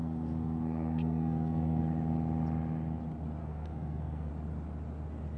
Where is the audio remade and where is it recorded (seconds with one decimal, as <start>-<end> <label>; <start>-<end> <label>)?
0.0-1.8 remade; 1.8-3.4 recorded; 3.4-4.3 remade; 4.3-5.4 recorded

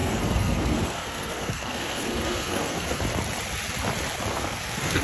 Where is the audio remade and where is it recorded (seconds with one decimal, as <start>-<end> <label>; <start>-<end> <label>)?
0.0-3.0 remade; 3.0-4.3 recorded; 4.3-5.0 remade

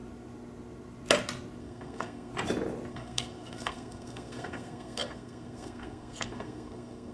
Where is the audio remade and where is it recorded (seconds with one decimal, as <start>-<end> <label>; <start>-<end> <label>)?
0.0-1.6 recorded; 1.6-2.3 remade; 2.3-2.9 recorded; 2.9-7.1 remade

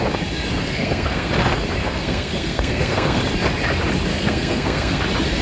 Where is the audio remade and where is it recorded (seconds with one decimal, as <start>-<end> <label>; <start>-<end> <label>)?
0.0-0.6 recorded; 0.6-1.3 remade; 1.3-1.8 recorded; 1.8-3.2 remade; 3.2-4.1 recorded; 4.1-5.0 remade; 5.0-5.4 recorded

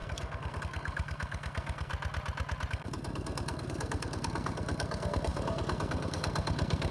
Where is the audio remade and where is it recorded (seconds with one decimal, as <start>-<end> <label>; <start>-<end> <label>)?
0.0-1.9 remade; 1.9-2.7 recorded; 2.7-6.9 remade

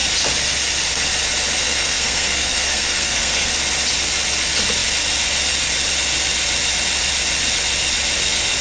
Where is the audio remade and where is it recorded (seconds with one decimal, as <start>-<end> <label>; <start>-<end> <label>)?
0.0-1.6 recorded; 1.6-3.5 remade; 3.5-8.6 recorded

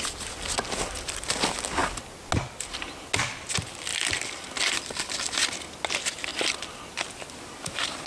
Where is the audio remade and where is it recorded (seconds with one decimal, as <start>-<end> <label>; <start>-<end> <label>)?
0.0-8.1 recorded

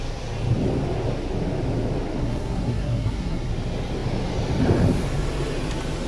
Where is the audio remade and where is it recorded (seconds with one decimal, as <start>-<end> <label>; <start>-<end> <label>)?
0.0-2.2 recorded; 2.2-3.5 remade; 3.5-6.1 recorded